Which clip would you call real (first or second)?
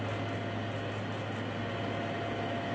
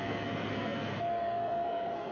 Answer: first